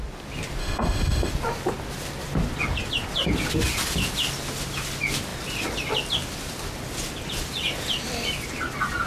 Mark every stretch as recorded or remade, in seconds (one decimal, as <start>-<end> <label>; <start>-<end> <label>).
0.0-0.6 recorded; 0.6-1.3 remade; 1.3-9.1 recorded